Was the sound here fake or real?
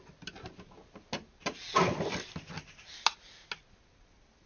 real